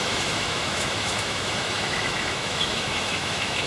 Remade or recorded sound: remade